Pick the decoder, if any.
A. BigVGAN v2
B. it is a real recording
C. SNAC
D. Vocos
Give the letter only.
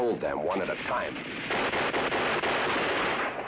B